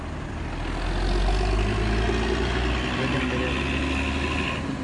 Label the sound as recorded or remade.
recorded